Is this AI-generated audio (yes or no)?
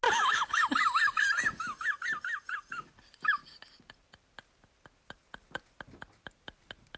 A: no